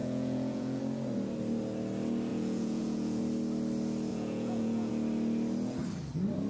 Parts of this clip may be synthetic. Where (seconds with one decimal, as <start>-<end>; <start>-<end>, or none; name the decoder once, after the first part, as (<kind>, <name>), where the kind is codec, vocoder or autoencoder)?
0.0-0.8 (vocoder, Vocos); 2.3-3.2; 4.1-4.9